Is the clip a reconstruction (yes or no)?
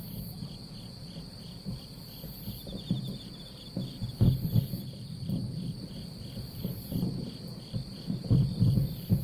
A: no